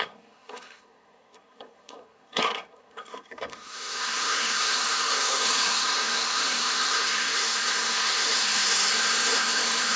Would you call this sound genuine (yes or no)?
no